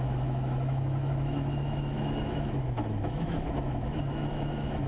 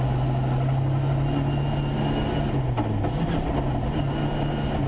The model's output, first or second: first